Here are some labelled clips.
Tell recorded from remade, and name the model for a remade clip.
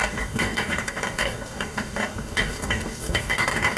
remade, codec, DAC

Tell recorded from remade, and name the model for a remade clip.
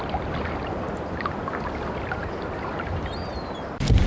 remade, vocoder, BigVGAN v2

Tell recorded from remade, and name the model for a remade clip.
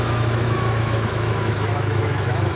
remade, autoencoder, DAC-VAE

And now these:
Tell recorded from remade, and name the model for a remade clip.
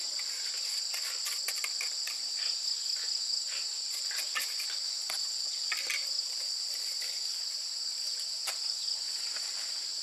recorded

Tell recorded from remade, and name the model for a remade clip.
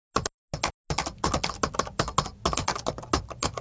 recorded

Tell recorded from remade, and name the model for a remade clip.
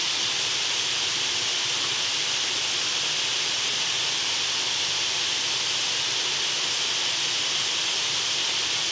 recorded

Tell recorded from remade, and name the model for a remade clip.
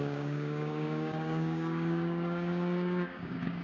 remade, codec, DAC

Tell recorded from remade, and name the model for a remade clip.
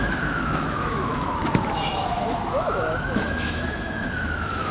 remade, autoencoder, DAC-VAE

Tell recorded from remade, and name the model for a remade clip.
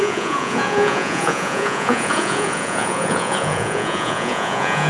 remade, vocoder, Vocos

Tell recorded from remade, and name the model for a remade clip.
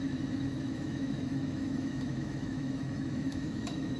remade, autoencoder, DAC-VAE